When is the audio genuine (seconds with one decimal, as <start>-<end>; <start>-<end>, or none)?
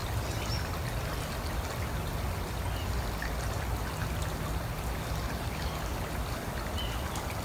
0.0-7.4